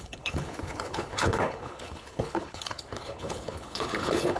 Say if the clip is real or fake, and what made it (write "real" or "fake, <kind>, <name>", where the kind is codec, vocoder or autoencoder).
fake, codec, HILCodec